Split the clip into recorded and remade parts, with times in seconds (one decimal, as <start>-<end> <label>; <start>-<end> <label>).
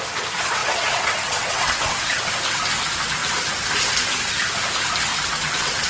0.0-0.6 recorded; 0.6-2.3 remade; 2.3-5.1 recorded; 5.1-5.9 remade